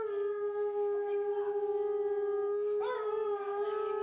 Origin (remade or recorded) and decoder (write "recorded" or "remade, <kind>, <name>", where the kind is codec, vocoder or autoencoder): recorded